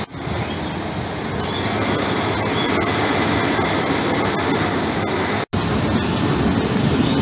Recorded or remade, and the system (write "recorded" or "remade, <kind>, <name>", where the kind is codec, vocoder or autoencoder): recorded